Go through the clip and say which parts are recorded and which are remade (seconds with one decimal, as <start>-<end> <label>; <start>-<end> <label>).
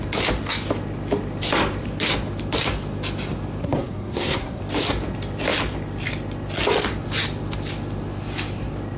0.0-3.6 recorded; 3.6-4.6 remade; 4.6-9.0 recorded